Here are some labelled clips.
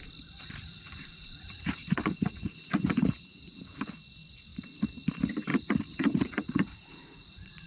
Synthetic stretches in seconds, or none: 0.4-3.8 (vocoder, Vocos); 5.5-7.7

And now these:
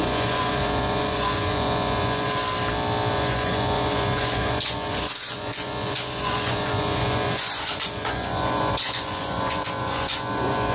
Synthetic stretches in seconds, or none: 0.0-2.4 (vocoder, Vocos); 3.1-10.7